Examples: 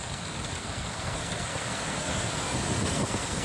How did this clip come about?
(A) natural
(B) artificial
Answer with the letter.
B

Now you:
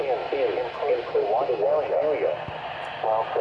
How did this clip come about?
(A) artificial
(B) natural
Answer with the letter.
B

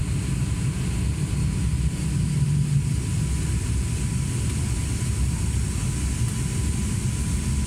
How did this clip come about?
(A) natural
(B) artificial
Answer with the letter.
A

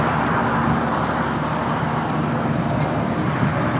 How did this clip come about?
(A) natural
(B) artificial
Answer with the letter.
A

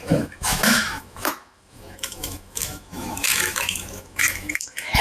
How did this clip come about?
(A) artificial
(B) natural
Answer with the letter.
A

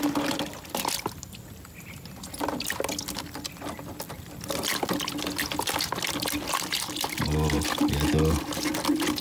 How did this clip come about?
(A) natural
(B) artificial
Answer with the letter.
A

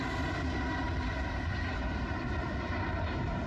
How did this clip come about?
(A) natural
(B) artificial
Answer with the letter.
A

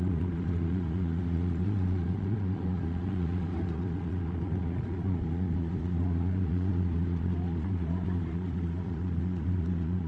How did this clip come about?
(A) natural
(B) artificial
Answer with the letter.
B